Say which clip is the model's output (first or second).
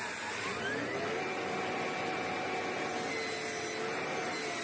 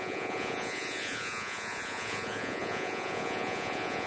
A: second